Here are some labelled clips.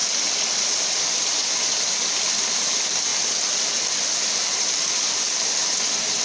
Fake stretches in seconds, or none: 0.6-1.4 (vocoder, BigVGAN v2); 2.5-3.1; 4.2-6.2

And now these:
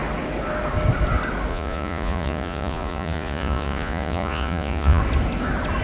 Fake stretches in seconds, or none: 1.5-5.0 (vocoder, Vocos)

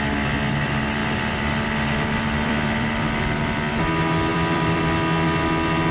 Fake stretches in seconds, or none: 1.0-3.7 (vocoder, BigVGAN v2); 4.3-4.8